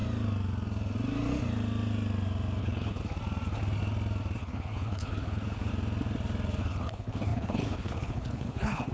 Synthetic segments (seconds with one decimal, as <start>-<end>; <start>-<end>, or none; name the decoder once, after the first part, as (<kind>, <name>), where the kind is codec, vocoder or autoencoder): 2.6-3.0 (codec, HILCodec); 4.4-5.7; 6.6-8.9

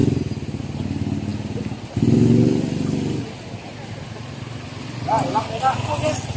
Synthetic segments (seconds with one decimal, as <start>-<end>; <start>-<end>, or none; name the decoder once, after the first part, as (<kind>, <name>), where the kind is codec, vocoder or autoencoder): none

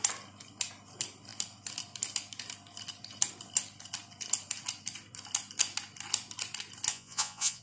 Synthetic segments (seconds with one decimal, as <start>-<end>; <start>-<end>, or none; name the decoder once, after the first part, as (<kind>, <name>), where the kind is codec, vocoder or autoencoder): 6.9-7.6 (vocoder, Vocos)

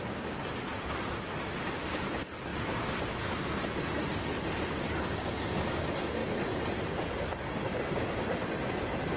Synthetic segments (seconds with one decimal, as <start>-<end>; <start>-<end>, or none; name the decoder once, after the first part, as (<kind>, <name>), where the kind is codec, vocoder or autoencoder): 0.4-2.1 (vocoder, BigVGAN v2); 2.5-3.2; 6.2-7.7

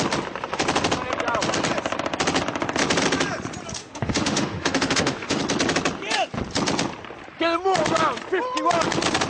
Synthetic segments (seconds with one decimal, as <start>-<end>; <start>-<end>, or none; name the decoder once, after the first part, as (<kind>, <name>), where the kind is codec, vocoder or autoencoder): 3.8-5.4 (autoencoder, DAC-VAE)

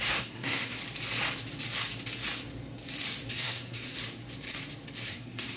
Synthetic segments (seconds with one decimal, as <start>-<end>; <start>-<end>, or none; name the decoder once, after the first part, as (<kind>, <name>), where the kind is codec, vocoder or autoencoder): 0.0-0.8 (codec, SNAC); 3.3-3.9; 5.1-5.6